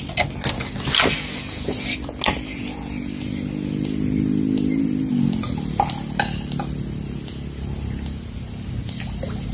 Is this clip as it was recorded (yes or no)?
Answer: yes